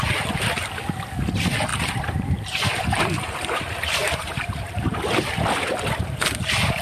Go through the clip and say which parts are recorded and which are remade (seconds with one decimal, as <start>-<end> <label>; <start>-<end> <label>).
0.0-1.7 recorded; 1.7-5.0 remade; 5.0-6.8 recorded